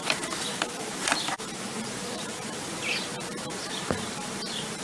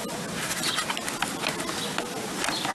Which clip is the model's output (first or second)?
first